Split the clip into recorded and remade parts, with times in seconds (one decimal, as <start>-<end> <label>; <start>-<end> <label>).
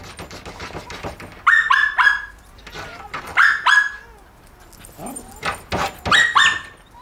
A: 0.0-7.0 recorded